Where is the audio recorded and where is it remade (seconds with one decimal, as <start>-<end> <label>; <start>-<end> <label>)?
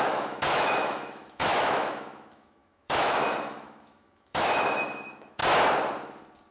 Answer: 0.0-5.4 remade; 5.4-6.5 recorded